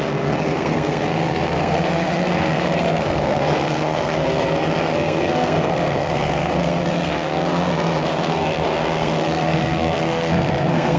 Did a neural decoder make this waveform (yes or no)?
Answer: yes